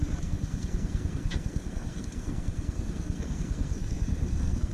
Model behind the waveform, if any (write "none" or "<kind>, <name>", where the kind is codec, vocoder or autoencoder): codec, SNAC